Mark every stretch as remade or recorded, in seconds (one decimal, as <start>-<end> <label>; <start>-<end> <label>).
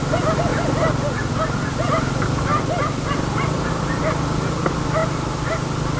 0.0-6.0 recorded